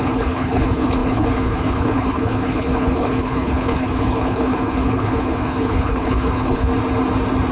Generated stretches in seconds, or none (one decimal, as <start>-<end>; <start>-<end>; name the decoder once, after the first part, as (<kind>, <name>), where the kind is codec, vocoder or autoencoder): 0.0-6.7 (codec, HILCodec)